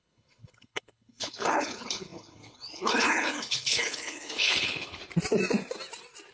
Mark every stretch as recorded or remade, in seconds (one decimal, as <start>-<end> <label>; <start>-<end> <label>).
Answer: 0.0-5.0 remade; 5.0-6.3 recorded